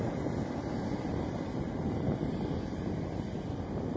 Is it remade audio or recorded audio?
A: recorded